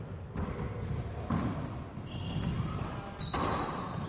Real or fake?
real